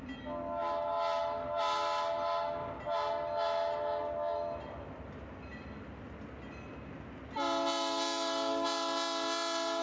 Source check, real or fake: real